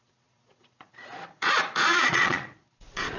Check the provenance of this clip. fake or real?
fake